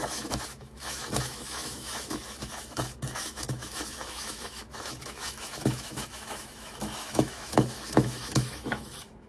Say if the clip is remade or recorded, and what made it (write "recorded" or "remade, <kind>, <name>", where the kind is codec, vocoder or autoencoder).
remade, autoencoder, DAC-VAE